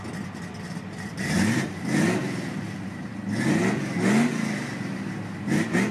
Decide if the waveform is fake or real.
real